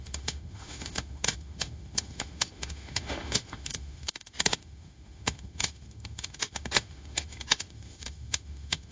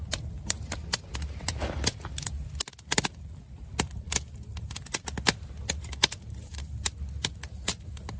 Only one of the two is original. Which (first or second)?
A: second